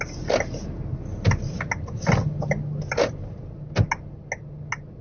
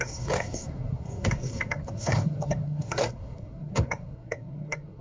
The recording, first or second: first